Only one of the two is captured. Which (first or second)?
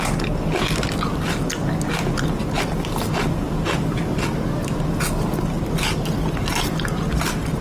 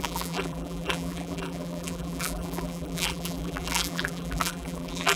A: first